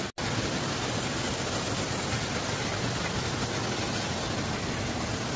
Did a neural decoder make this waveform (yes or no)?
no